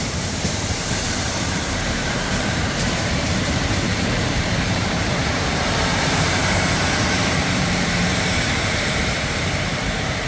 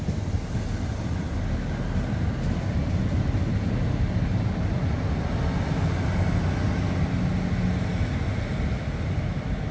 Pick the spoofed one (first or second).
first